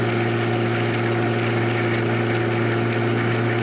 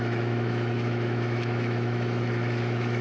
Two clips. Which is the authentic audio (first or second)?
first